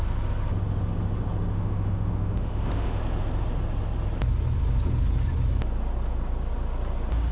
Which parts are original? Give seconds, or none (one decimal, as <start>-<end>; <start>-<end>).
0.0-1.5; 3.0-7.3